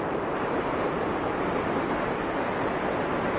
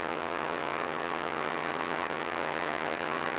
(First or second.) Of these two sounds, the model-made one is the second